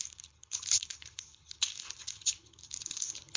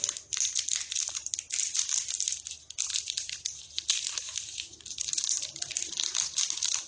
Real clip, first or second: second